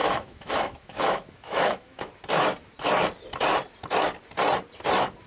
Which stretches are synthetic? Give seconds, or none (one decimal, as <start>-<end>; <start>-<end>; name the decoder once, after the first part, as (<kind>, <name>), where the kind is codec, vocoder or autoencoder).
0.0-2.1 (autoencoder, DAC-VAE)